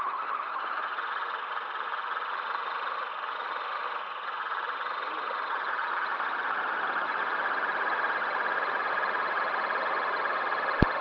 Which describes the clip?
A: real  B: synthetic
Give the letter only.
A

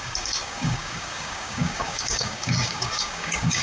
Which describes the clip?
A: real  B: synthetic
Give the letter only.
B